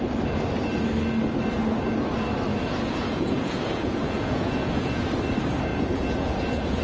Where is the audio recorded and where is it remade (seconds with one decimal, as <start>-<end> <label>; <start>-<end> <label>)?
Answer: 0.0-2.5 recorded; 2.5-5.0 remade; 5.0-5.7 recorded; 5.7-6.8 remade